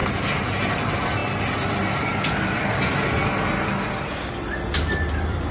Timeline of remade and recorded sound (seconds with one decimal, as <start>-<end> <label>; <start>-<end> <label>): 0.0-5.5 recorded